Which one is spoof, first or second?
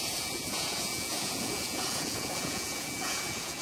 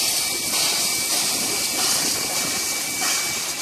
first